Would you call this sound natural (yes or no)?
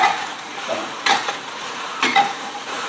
no